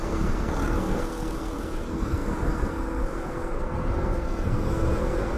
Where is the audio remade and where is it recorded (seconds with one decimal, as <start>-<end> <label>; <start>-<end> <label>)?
0.0-5.4 remade